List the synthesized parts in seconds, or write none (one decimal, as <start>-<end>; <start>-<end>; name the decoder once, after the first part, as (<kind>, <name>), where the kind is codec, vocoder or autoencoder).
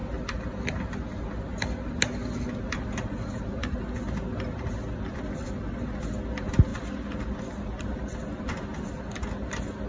none